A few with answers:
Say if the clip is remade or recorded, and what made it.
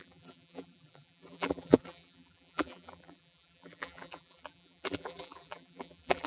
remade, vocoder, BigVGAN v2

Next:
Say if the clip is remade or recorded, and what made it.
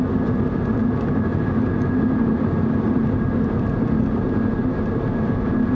recorded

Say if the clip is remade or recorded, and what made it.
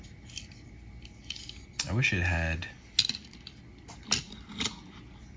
recorded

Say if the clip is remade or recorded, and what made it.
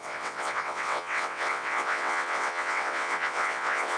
remade, vocoder, WaveNeXt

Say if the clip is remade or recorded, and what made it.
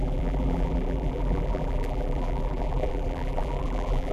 remade, vocoder, BigVGAN v2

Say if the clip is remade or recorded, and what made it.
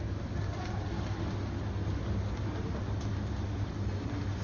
recorded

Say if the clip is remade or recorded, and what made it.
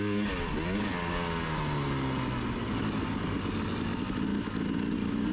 recorded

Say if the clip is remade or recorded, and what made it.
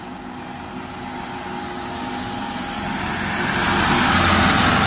recorded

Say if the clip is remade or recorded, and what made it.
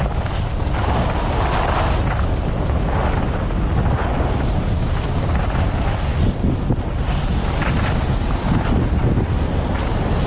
recorded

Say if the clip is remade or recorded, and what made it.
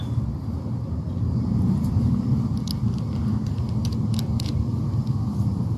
recorded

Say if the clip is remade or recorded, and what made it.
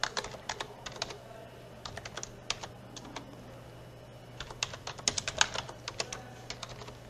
recorded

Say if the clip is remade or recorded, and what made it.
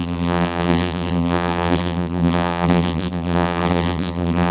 remade, vocoder, BigVGAN v2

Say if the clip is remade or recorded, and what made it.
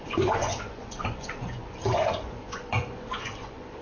remade, vocoder, Vocos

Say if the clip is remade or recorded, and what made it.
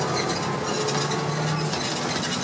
recorded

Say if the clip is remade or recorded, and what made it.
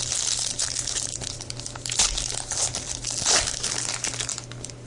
recorded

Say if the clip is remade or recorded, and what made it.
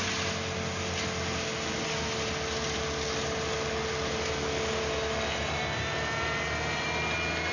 recorded